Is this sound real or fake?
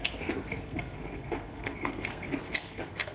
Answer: fake